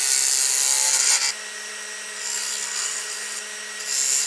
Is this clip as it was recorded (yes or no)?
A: yes